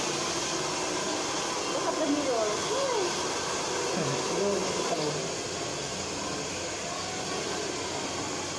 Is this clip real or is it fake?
real